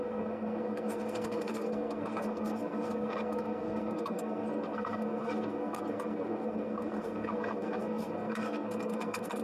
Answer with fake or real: fake